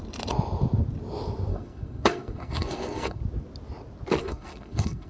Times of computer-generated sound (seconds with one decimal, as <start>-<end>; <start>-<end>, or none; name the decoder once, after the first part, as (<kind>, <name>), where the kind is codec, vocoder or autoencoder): 1.5-3.2 (codec, SNAC); 4.2-5.1